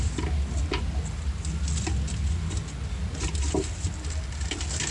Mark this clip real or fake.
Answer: real